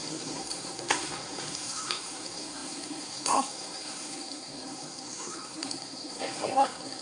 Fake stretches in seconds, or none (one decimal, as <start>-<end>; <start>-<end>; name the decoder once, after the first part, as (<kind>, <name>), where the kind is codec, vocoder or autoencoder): 0.0-7.0 (codec, SNAC)